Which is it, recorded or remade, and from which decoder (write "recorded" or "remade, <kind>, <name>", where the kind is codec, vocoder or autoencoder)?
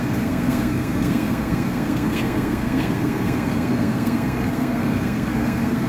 remade, codec, SNAC